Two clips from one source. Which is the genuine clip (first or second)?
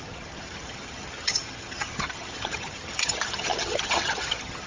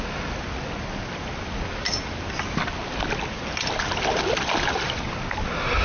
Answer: second